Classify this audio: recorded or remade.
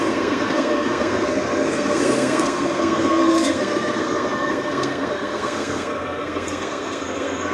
remade